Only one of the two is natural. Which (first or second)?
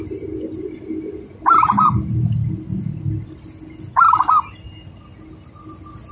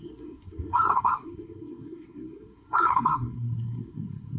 first